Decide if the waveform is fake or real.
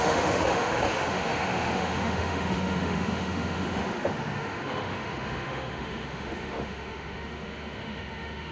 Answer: fake